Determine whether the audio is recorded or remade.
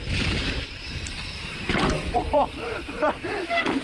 remade